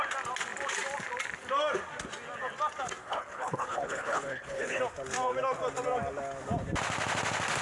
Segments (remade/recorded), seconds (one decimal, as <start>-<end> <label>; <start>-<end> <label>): 0.0-3.0 recorded; 3.0-4.8 remade; 4.8-7.6 recorded